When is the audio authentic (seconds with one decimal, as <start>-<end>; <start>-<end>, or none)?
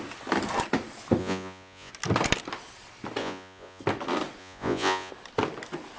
0.0-1.2; 1.9-3.2; 3.8-4.4; 5.1-6.0